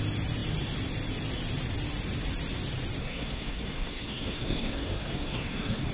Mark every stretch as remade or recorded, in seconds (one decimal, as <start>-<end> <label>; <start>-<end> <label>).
0.0-3.0 recorded; 3.0-5.9 remade